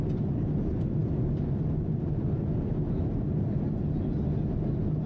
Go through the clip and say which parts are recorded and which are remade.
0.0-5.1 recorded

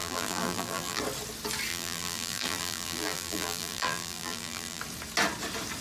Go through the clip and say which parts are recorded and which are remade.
0.0-1.0 remade; 1.0-1.7 recorded; 1.7-4.8 remade; 4.8-5.8 recorded